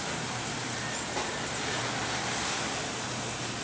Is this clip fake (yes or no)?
no